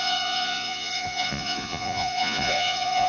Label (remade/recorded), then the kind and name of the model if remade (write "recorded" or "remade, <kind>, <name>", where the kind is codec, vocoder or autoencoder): remade, vocoder, Vocos